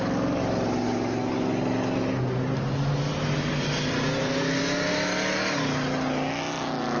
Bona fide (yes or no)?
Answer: yes